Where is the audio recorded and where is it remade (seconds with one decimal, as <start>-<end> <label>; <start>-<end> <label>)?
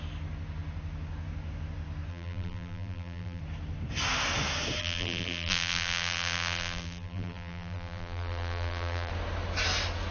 0.0-2.1 recorded; 2.1-3.4 remade; 3.4-4.8 recorded; 4.8-9.1 remade; 9.1-10.1 recorded